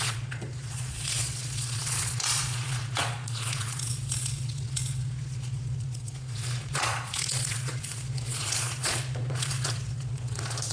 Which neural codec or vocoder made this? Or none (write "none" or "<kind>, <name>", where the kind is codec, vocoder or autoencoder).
vocoder, Vocos